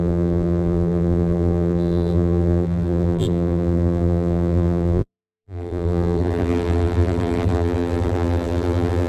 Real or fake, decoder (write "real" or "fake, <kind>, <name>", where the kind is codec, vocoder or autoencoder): fake, vocoder, BigVGAN v2